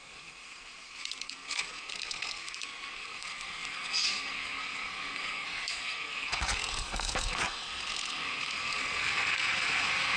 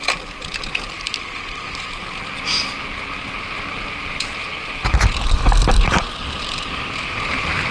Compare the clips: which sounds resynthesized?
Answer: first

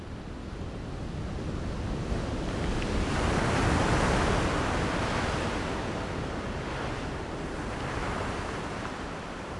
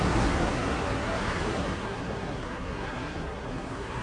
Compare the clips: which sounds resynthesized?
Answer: second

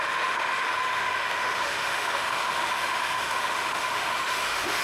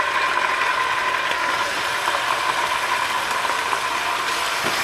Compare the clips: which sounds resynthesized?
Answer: first